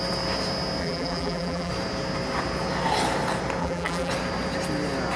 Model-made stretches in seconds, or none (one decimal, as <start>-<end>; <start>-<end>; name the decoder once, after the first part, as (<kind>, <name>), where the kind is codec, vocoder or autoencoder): 0.8-1.7 (vocoder, BigVGAN v2); 3.6-4.1